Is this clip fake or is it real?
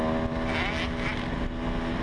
real